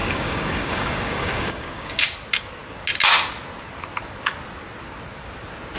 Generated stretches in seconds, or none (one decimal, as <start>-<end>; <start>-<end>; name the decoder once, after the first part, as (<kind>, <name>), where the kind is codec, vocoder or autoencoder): 0.0-2.0 (codec, DAC)